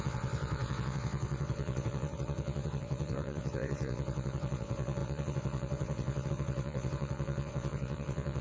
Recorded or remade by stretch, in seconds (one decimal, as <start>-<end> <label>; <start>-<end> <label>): 0.0-8.4 remade